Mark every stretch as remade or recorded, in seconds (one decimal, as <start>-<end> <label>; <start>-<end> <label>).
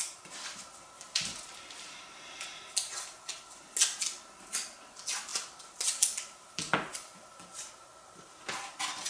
0.0-9.1 recorded